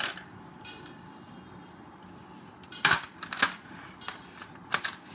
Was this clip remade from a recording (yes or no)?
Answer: no